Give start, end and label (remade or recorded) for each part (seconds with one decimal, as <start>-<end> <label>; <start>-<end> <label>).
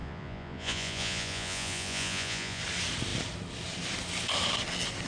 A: 0.0-2.6 remade; 2.6-5.1 recorded